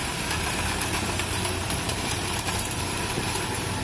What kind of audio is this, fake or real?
fake